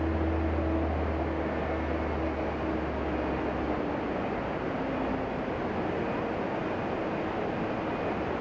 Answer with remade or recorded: recorded